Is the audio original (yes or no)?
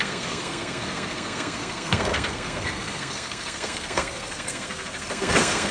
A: no